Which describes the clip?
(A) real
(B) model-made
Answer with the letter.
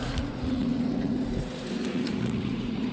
B